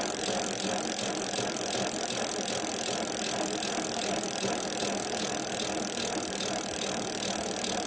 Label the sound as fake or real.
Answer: real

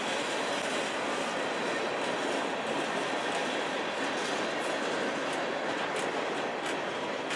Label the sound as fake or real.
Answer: real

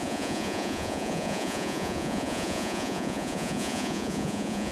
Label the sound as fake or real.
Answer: fake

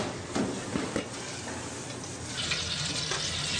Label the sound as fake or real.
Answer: real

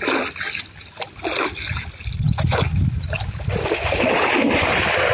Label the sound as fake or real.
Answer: real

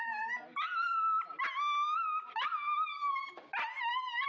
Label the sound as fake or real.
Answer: real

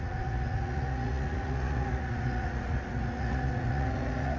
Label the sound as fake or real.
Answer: fake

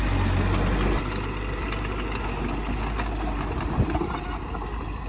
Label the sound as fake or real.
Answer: real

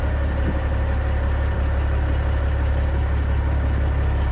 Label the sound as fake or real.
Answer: real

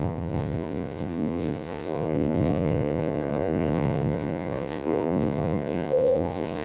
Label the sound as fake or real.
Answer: fake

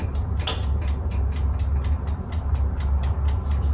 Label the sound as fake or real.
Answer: real